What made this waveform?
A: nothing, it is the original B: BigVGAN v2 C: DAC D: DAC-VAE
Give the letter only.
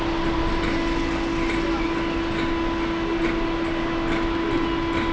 A